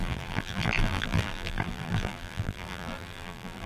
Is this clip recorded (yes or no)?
no